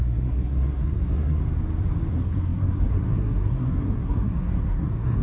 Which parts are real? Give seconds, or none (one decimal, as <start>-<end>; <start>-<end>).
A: 1.4-2.1